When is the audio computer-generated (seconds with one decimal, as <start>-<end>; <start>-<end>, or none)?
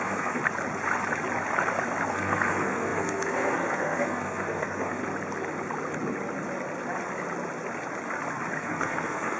0.0-0.4; 2.1-5.0; 8.6-9.4